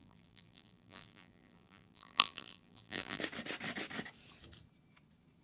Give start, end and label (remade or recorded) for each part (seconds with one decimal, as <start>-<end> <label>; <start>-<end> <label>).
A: 0.0-3.2 remade; 3.2-5.4 recorded